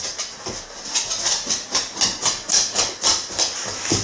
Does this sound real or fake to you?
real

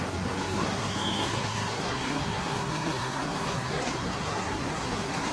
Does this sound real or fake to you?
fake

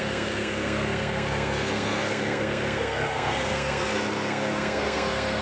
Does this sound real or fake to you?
fake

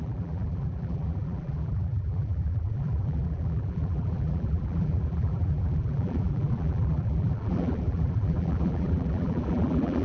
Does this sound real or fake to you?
fake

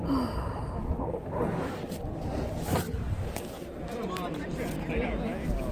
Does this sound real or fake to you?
real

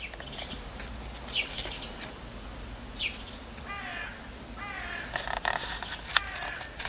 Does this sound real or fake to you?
real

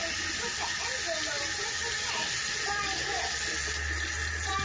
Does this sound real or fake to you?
real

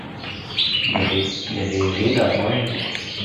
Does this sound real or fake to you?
real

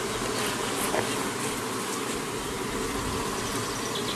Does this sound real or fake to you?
real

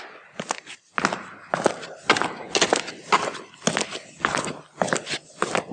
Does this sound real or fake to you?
real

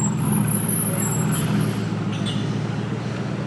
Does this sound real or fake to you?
real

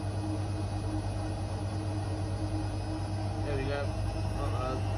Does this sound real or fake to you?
real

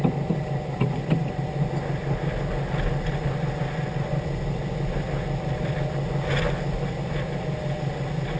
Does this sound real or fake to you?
real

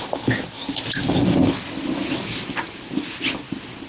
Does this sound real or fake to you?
real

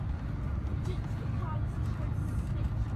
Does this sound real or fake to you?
real